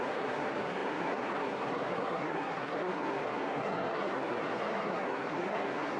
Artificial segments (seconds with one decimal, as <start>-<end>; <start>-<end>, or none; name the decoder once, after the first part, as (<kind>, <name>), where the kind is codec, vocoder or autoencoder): 0.0-6.0 (codec, SNAC)